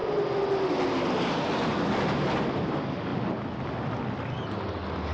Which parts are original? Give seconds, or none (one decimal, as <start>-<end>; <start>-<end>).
0.0-5.1